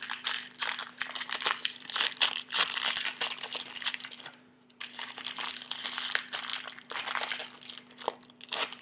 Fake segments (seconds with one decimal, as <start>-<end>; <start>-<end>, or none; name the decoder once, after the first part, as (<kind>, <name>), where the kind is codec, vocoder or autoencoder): 0.8-5.5 (vocoder, BigVGAN v2); 6.5-7.0